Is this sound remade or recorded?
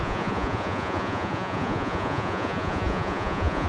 remade